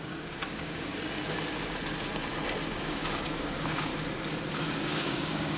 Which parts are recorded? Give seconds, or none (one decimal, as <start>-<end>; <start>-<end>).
0.9-2.7; 3.9-4.5